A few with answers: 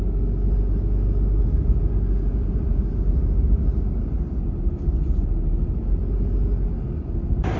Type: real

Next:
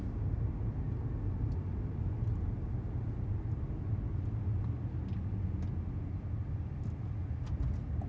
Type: real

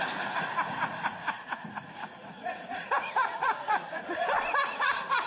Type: fake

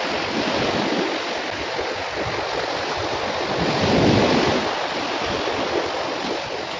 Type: real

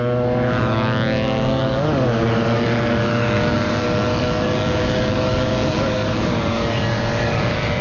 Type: fake